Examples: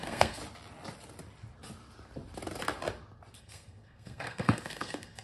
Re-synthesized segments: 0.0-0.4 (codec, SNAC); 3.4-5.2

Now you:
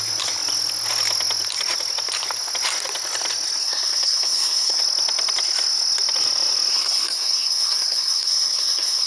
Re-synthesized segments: 3.6-4.8 (codec, SNAC); 6.7-9.1

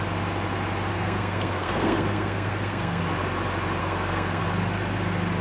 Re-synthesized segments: 0.9-3.0 (codec, SNAC); 3.8-4.4

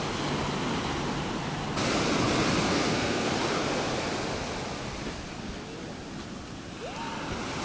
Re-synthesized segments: 2.7-3.3 (codec, SNAC)

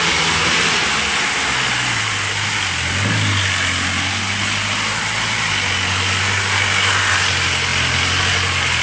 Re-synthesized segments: none

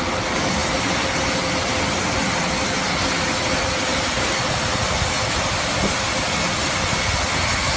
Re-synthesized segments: none

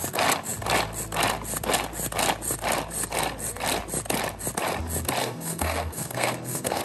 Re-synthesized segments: 5.2-6.8 (codec, SNAC)